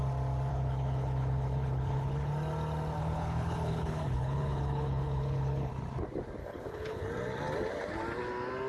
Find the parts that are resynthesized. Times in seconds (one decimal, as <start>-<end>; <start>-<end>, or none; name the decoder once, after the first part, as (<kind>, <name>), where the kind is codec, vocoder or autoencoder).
0.5-2.3 (codec, HILCodec); 3.0-5.7; 6.4-7.0